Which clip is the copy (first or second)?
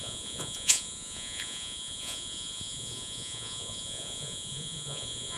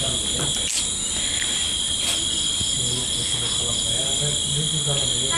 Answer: first